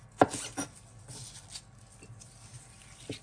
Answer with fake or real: real